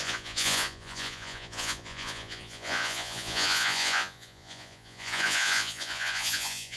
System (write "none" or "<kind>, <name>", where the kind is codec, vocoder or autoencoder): vocoder, Vocos